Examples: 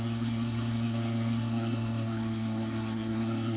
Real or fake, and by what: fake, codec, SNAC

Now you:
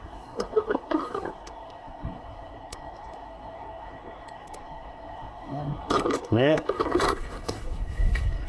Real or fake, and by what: fake, codec, SNAC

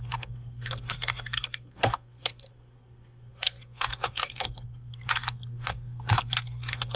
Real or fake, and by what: fake, codec, SNAC